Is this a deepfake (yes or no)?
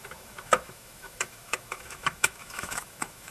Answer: yes